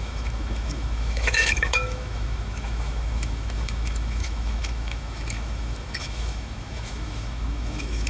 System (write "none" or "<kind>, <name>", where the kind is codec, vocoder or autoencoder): autoencoder, DAC-VAE